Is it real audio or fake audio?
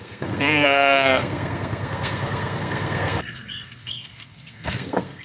fake